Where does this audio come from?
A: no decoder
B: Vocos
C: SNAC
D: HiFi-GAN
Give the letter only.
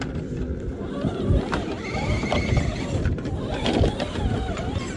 A